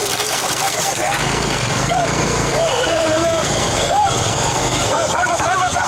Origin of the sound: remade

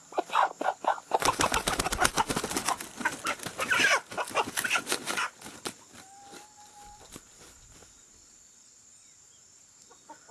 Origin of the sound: recorded